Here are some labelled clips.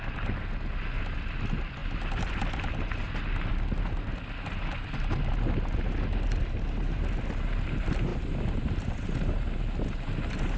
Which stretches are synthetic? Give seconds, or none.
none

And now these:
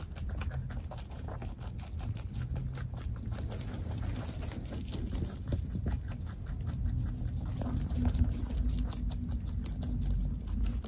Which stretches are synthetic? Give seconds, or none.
none

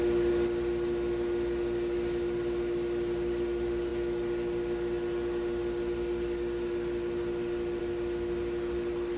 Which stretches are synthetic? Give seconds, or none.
none

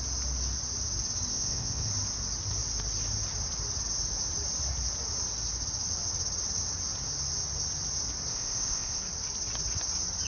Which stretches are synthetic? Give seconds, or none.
1.3-1.9 (codec, ZipCodec); 8.3-9.0